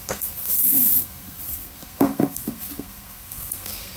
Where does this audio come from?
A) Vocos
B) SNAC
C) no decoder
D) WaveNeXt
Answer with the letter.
B